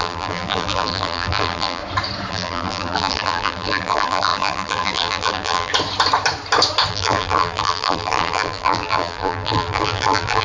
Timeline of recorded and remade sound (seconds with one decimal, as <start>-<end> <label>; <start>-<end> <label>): 0.0-1.8 remade; 1.8-2.3 recorded; 2.3-5.7 remade; 5.7-6.9 recorded; 6.9-10.4 remade